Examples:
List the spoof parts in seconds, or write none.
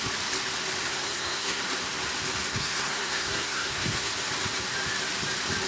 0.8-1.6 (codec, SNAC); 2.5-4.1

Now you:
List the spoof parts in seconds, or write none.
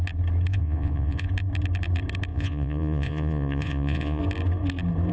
0.5-1.3 (vocoder, Vocos); 2.3-4.2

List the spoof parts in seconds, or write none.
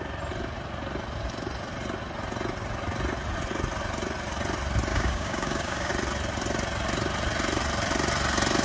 4.9-5.9 (codec, DAC)